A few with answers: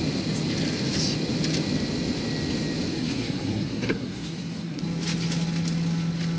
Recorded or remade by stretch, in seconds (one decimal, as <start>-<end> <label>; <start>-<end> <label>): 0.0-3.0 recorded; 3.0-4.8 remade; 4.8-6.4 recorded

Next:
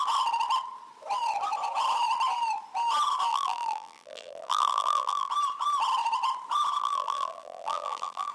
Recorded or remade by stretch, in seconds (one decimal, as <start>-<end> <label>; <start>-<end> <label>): 0.0-3.3 recorded; 3.3-5.3 remade; 5.3-6.8 recorded; 6.8-8.3 remade

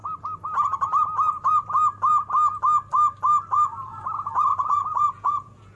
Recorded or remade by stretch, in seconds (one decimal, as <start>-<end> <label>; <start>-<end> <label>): 0.0-3.5 recorded; 3.5-3.9 remade; 3.9-4.5 recorded; 4.5-5.8 remade